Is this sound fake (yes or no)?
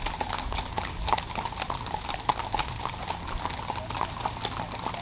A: no